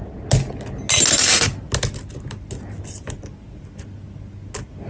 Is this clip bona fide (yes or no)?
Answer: yes